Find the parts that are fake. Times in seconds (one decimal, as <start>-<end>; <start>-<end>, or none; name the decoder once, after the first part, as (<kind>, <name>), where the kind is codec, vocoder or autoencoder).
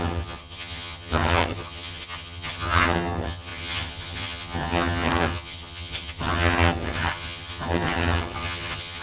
0.0-9.0 (vocoder, HiFi-GAN)